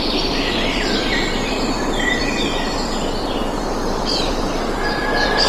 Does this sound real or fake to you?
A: fake